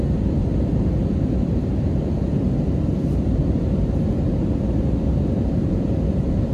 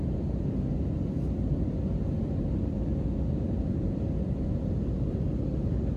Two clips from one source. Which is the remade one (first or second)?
first